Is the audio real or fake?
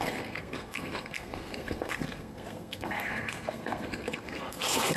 fake